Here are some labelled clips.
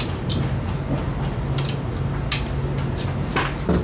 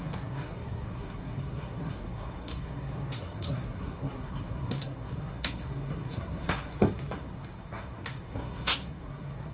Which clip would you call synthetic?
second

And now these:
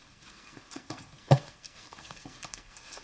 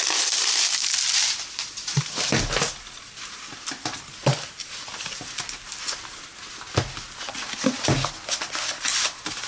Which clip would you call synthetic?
first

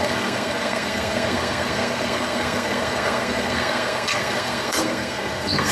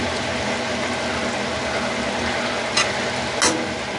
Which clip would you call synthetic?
first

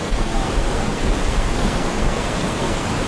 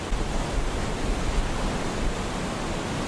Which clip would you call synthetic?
first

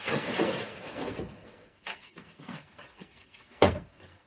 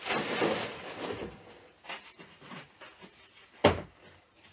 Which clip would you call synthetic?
first